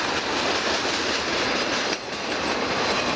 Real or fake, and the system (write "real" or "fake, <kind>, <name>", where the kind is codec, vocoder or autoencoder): real